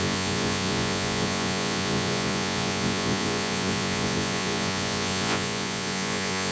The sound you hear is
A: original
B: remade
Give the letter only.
B